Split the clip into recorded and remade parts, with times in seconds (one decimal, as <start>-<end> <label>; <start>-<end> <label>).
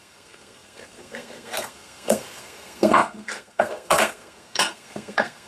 0.0-5.5 remade